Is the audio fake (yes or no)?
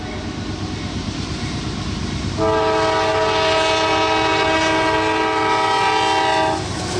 no